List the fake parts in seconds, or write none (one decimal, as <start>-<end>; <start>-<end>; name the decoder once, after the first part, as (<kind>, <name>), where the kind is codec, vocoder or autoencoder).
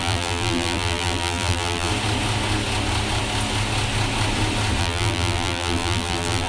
0.0-1.9 (vocoder, BigVGAN v2); 4.8-6.5